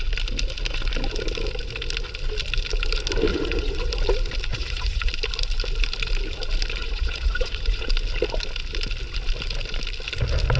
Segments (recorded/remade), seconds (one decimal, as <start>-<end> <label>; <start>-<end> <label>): 0.0-3.3 recorded; 3.3-3.9 remade; 3.9-4.5 recorded; 4.5-5.1 remade; 5.1-6.8 recorded; 6.8-7.9 remade; 7.9-10.6 recorded